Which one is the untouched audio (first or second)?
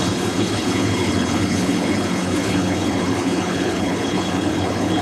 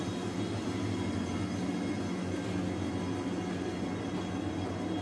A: second